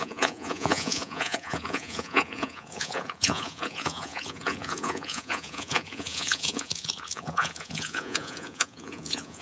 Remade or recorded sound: remade